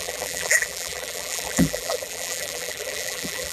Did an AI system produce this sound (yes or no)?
yes